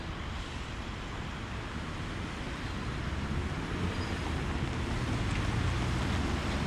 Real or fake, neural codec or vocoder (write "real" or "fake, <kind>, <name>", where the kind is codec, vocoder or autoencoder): real